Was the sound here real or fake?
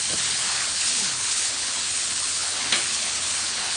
fake